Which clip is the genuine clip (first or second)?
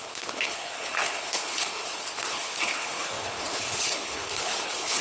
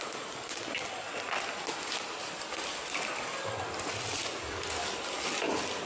second